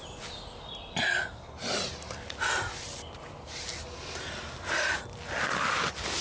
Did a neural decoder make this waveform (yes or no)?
no